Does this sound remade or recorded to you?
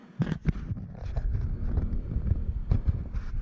remade